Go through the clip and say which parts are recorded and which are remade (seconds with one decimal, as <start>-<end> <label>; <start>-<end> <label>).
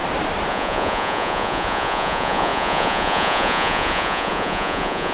0.0-0.5 recorded; 0.5-5.1 remade